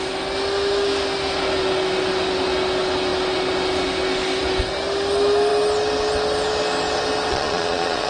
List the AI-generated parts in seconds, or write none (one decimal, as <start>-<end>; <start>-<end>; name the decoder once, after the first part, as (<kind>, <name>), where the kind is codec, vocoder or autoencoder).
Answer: 7.3-8.1 (vocoder, Vocos)

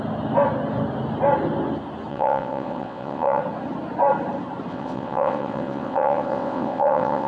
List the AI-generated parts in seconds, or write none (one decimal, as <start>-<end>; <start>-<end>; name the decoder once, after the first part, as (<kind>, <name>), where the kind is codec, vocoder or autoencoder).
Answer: 2.1-3.4 (vocoder, WaveNeXt); 4.7-7.3

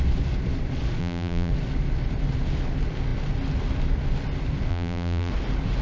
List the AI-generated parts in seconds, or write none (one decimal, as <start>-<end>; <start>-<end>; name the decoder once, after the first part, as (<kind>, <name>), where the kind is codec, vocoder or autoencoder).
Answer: 1.0-1.5 (vocoder, BigVGAN v2); 4.7-5.3

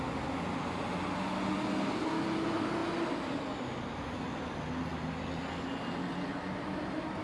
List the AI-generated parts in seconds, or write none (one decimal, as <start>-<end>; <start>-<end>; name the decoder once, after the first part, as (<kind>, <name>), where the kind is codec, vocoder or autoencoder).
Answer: none

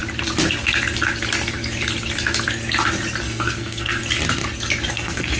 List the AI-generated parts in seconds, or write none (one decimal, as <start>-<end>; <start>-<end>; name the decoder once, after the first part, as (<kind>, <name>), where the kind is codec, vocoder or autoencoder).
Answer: 3.2-4.0 (codec, SNAC); 4.9-5.4